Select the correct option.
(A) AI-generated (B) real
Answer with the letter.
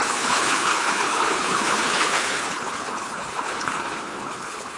A